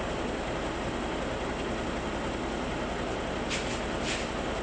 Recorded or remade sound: recorded